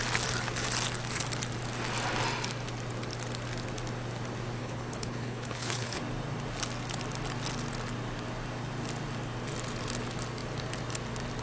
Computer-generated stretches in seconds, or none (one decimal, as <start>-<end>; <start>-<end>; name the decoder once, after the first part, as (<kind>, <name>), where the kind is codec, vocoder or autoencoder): 4.6-6.0 (codec, HILCodec)

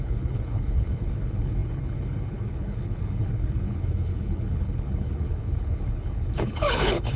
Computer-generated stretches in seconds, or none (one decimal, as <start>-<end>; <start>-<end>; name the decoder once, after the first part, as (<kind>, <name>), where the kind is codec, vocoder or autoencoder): 0.0-7.2 (codec, HILCodec)

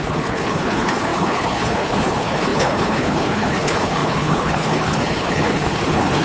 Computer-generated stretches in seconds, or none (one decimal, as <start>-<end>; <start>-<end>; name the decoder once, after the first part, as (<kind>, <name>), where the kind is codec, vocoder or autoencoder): 0.0-6.2 (codec, HILCodec)

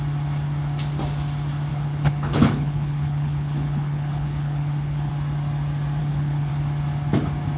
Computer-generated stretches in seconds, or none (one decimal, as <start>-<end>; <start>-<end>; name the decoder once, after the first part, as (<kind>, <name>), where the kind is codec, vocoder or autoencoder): 1.7-5.1 (codec, HILCodec); 6.0-6.5